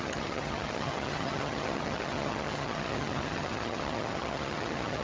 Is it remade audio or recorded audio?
remade